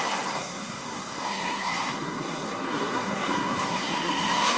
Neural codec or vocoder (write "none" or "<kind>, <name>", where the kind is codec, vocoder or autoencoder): codec, SNAC